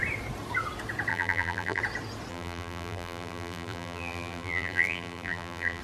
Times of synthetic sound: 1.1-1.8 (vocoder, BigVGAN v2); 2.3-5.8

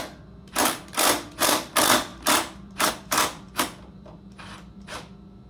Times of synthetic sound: 0.0-5.5 (vocoder, BigVGAN v2)

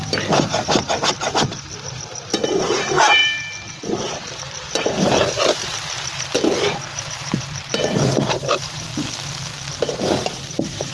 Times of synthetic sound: 0.0-8.9 (vocoder, BigVGAN v2); 9.7-10.9

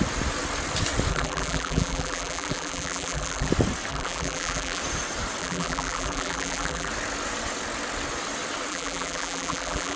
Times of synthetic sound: 1.1-3.5 (vocoder, BigVGAN v2); 3.9-4.8; 5.4-6.9; 8.7-10.0